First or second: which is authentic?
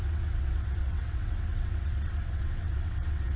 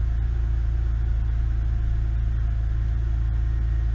second